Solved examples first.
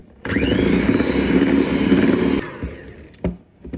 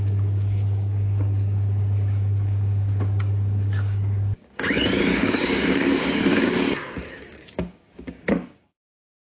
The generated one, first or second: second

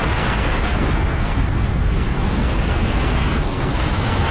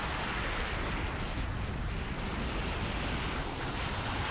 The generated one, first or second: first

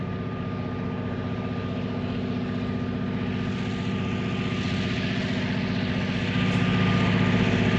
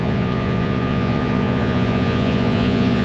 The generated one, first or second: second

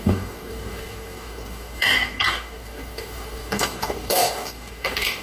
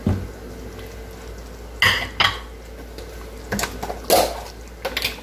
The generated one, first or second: first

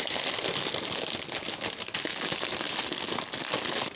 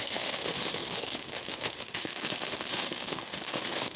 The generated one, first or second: second